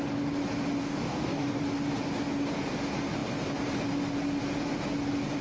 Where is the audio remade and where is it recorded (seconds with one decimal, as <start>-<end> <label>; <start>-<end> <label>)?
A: 0.0-0.8 recorded; 0.8-1.6 remade; 1.6-5.4 recorded